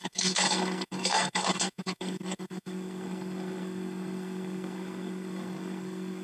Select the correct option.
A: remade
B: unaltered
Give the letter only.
A